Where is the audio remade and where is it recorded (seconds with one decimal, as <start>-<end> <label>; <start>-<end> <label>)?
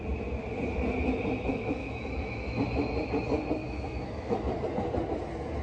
0.0-1.5 recorded; 1.5-2.6 remade; 2.6-3.6 recorded; 3.6-4.5 remade; 4.5-5.6 recorded